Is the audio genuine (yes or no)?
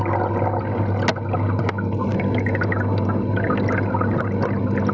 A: yes